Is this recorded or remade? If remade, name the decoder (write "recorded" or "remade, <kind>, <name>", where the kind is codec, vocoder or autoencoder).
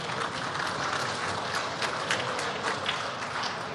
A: recorded